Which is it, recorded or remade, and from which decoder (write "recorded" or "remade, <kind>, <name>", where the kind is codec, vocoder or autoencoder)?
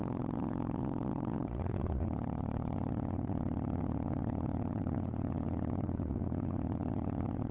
remade, vocoder, Vocos